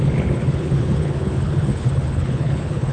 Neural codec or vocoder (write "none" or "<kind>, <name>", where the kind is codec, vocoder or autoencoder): codec, HILCodec